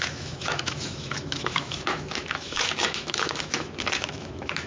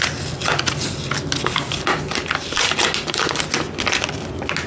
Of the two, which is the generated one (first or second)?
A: first